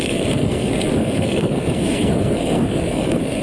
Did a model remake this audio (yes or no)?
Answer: yes